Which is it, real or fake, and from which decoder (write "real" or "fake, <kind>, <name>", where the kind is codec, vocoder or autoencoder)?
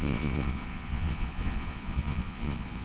fake, vocoder, Vocos